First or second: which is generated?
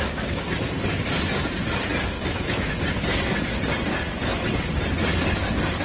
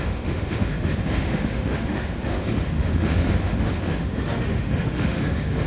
second